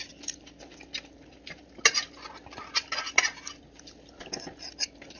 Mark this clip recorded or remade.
recorded